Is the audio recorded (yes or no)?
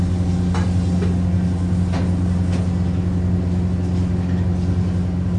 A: yes